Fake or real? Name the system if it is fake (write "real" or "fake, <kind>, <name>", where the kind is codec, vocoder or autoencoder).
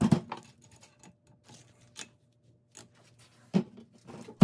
real